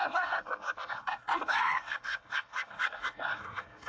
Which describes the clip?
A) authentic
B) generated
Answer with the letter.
B